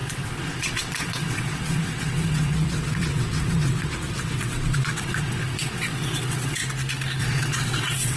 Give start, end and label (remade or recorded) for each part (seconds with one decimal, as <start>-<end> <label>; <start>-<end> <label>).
0.0-6.6 remade; 6.6-7.2 recorded; 7.2-8.2 remade